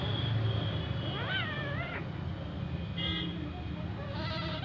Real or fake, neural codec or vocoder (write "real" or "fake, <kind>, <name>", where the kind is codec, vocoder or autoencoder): real